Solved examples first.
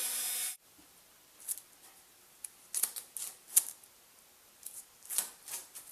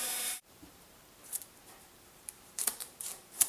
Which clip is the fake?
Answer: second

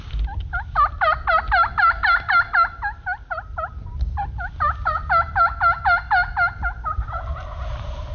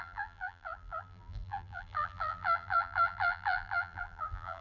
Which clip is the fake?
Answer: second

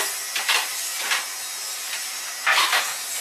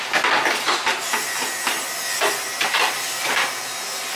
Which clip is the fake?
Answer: second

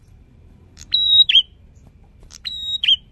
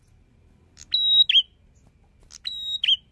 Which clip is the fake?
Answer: first